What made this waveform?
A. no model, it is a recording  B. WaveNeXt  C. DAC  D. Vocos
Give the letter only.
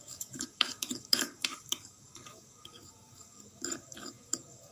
C